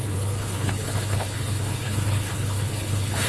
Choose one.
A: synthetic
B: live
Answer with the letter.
A